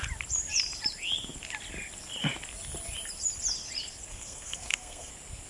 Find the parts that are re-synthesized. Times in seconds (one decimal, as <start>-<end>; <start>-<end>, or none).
4.1-5.1